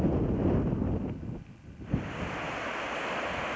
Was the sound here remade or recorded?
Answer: recorded